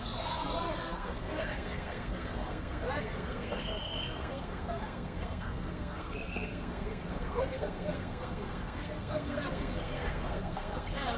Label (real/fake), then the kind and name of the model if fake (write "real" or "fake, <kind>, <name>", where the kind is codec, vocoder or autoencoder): fake, codec, SNAC